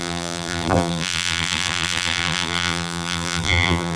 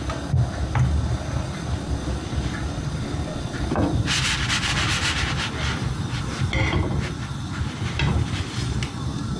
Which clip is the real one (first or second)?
second